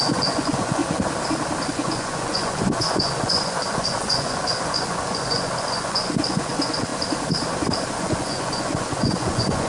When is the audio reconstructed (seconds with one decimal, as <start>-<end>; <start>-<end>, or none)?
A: 0.0-0.8; 1.6-6.9; 7.9-9.7